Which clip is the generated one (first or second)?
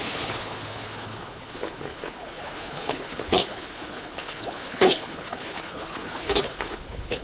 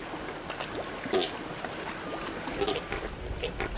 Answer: first